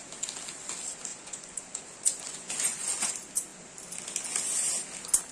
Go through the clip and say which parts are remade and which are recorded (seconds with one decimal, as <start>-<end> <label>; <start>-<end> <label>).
0.0-1.1 recorded; 1.1-3.1 remade; 3.1-5.3 recorded